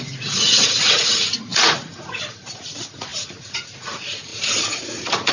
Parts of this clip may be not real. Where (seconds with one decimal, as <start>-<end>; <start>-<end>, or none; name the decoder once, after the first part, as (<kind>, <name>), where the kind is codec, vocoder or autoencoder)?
0.0-5.3 (vocoder, Vocos)